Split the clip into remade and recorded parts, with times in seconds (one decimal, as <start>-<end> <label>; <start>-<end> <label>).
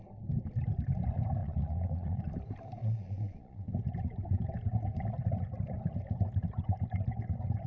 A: 0.0-1.4 recorded; 1.4-2.2 remade; 2.2-2.8 recorded; 2.8-3.7 remade; 3.7-7.7 recorded